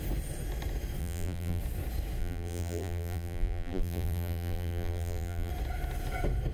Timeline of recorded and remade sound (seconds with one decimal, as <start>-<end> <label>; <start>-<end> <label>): 0.0-1.0 recorded; 1.0-1.6 remade; 1.6-2.2 recorded; 2.2-5.5 remade; 5.5-6.5 recorded